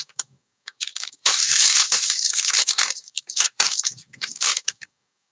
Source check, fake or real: fake